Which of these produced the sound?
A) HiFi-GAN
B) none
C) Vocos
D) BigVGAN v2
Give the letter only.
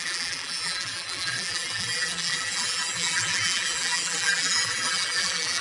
D